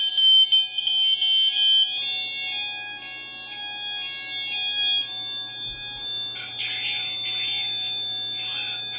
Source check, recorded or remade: recorded